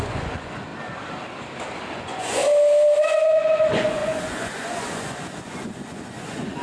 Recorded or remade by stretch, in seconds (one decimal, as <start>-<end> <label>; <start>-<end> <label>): 0.0-0.7 remade; 0.7-1.9 recorded; 1.9-2.4 remade; 2.4-3.0 recorded; 3.0-6.6 remade